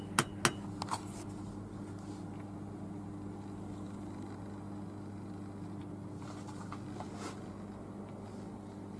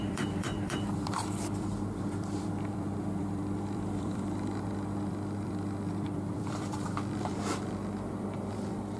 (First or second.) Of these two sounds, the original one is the first